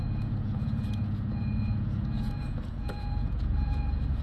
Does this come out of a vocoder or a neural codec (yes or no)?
yes